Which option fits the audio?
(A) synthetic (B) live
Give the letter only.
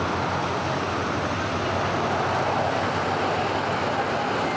B